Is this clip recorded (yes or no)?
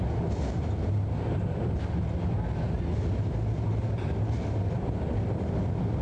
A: yes